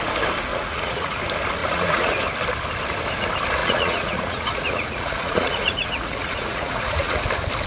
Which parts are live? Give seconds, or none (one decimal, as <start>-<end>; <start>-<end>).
0.0-0.5; 1.2-1.6; 2.1-3.6; 7.2-7.7